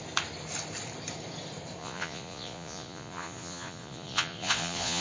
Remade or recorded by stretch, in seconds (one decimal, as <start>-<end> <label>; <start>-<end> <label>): 0.0-1.8 recorded; 1.8-5.0 remade

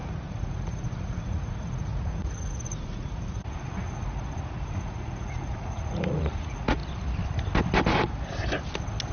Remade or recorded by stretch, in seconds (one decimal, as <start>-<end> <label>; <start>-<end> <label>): 0.0-6.8 remade; 6.8-9.1 recorded

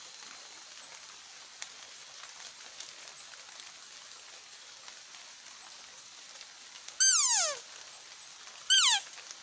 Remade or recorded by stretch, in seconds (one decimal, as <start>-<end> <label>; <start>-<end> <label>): 0.0-9.4 recorded

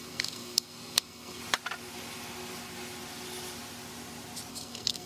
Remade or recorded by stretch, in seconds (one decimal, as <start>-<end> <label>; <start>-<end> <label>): 0.0-1.4 remade; 1.4-4.5 recorded; 4.5-5.1 remade

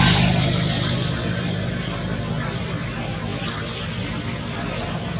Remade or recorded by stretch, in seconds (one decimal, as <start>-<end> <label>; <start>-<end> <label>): 0.0-5.2 recorded

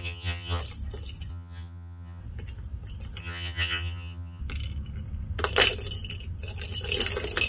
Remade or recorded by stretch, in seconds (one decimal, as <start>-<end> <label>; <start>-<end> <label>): 0.0-0.6 remade; 0.6-1.3 recorded; 1.3-2.2 remade; 2.2-3.2 recorded; 3.2-4.4 remade; 4.4-7.5 recorded